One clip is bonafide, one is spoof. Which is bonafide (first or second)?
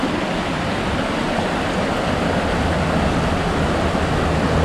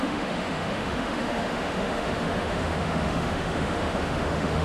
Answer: first